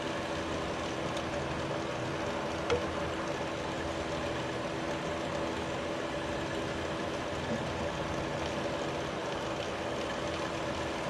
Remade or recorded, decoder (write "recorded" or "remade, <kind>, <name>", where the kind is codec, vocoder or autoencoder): recorded